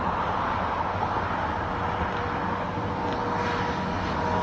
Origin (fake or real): real